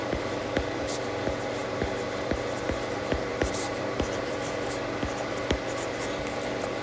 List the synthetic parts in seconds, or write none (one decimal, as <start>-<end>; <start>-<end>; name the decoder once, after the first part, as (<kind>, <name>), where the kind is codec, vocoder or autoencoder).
3.3-3.8 (vocoder, BigVGAN v2)